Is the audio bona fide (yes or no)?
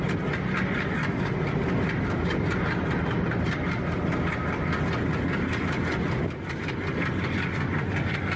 yes